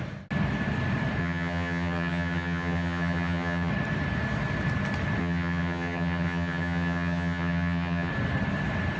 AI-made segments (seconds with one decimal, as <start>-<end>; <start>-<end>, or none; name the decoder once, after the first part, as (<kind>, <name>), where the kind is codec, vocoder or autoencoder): 1.2-3.7 (vocoder, HiFi-GAN); 5.2-8.1